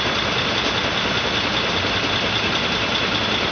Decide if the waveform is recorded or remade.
recorded